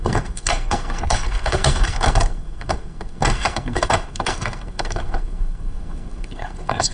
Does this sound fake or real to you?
fake